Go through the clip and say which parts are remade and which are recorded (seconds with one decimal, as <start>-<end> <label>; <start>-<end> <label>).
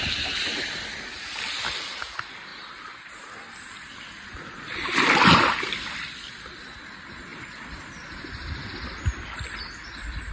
0.0-10.3 recorded